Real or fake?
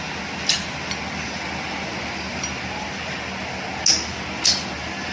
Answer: real